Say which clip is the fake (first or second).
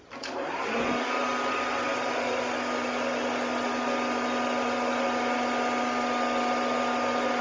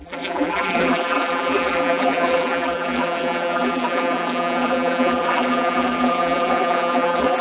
second